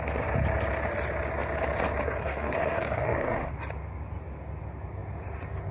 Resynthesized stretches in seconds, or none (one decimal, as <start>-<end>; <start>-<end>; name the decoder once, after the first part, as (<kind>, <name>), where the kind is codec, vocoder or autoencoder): 2.2-3.5 (codec, SNAC)